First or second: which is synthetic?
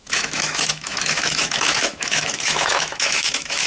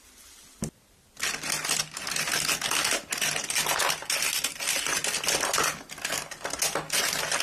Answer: first